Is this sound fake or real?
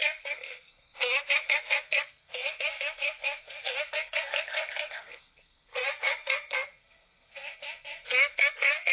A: fake